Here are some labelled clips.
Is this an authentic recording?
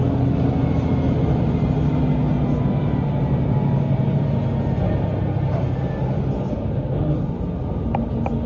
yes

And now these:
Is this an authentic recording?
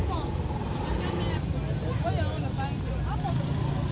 yes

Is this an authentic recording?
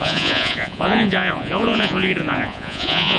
no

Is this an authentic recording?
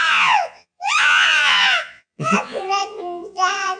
no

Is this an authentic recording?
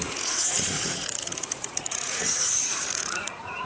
no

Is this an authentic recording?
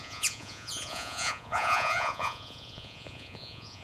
no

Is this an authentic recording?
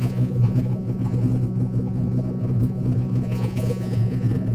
no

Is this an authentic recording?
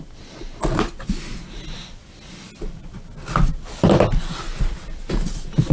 yes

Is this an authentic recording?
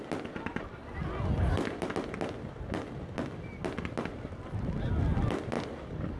yes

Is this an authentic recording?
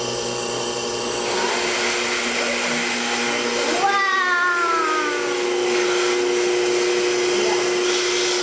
yes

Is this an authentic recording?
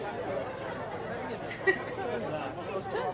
yes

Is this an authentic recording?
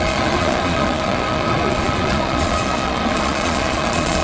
no